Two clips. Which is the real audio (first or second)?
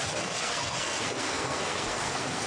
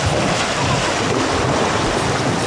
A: second